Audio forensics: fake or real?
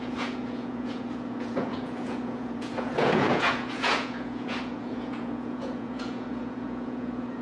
fake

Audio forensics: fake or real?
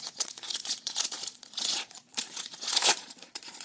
fake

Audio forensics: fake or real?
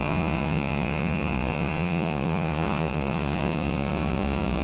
fake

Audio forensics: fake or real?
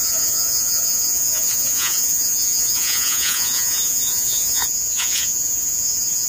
fake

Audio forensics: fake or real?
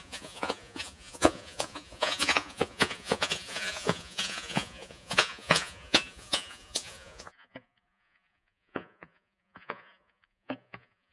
fake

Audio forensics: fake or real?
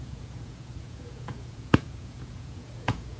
fake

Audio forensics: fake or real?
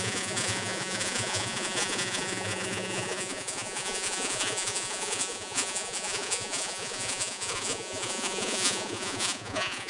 fake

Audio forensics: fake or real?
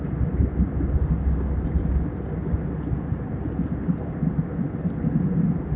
real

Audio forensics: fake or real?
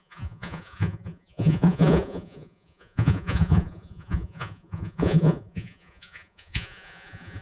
fake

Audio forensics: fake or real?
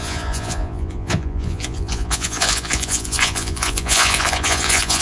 fake